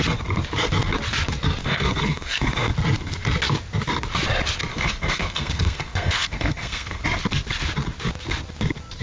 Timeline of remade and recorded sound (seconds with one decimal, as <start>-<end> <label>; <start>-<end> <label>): 0.0-1.6 recorded; 1.6-2.7 remade; 2.7-4.7 recorded; 4.7-7.0 remade; 7.0-9.0 recorded